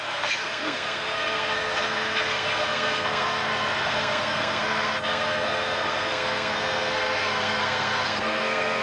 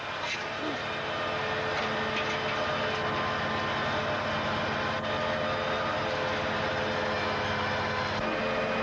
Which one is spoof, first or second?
first